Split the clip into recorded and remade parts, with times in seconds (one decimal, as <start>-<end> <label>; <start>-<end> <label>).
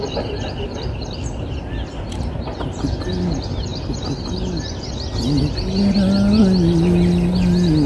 0.0-7.9 recorded